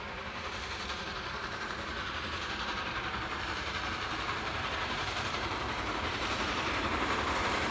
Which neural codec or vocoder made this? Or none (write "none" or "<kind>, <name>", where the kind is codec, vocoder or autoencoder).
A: vocoder, BigVGAN v2